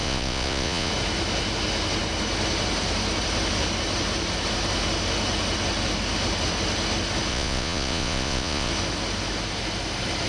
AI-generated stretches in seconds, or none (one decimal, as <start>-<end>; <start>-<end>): 0.0-0.9; 7.3-8.7